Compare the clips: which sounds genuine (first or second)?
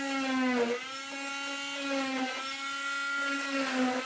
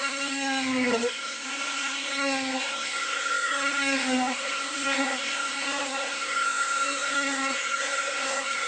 first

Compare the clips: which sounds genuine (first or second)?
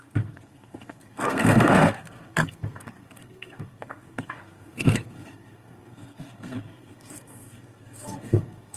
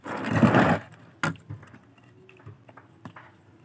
second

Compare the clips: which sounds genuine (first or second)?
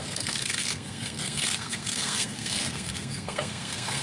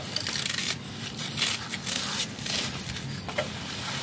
second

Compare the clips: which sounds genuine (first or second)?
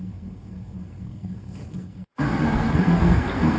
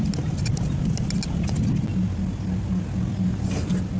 second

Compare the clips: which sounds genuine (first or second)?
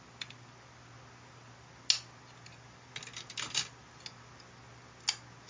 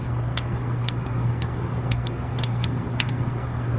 first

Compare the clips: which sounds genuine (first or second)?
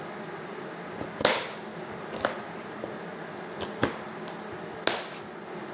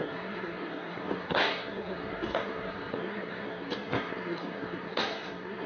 first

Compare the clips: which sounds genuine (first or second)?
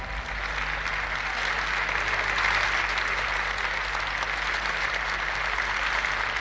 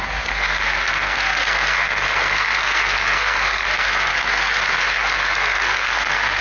first